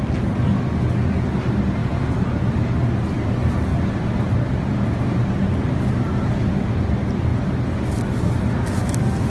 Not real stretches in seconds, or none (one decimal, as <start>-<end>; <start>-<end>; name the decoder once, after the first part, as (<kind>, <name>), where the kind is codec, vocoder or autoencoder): 1.8-2.7 (vocoder, BigVGAN v2); 3.7-6.7